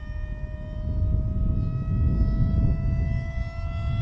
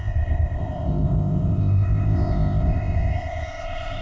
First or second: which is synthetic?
second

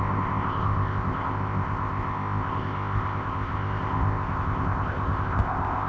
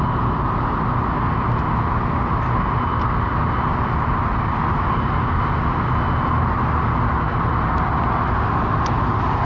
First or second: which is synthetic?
first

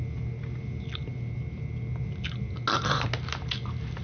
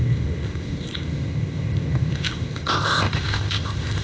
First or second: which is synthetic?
second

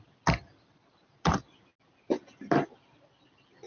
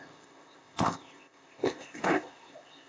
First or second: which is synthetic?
second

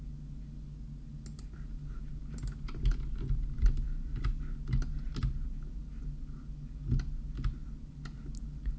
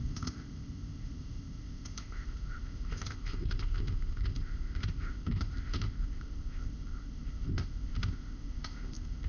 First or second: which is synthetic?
second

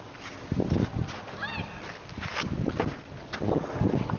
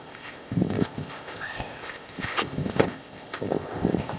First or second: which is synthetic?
second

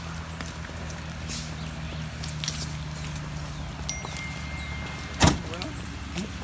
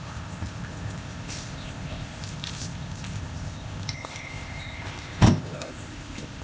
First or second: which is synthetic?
second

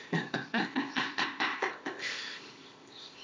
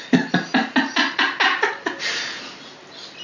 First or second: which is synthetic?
first